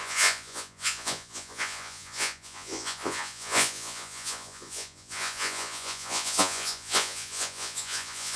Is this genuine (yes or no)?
no